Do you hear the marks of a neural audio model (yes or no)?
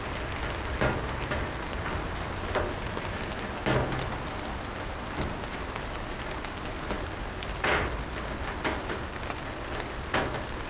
no